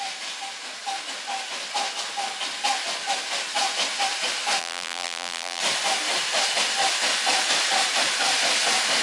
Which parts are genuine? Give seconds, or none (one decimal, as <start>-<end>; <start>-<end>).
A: 0.0-4.6; 5.6-9.0